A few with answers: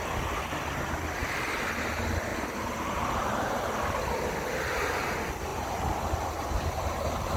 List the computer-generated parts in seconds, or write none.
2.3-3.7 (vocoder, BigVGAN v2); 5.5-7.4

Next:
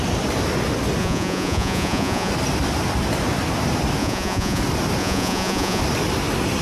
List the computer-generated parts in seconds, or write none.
1.0-2.3 (vocoder, Vocos); 4.0-4.6; 5.0-5.8

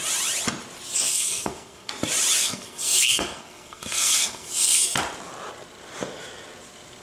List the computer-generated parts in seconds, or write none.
1.1-1.9 (codec, SNAC); 2.4-5.0

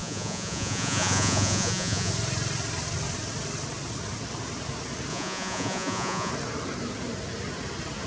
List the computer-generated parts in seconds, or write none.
0.0-2.1 (vocoder, Vocos); 5.1-6.3

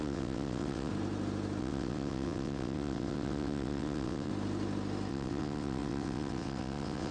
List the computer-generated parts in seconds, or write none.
0.0-0.9 (vocoder, WaveNeXt); 1.6-4.3; 5.1-7.1

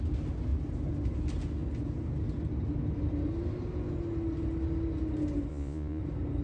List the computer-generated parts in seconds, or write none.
5.5-6.0 (vocoder, Vocos)

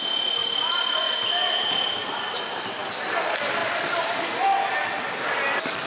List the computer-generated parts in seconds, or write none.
0.4-1.1 (vocoder, BigVGAN v2); 2.0-3.0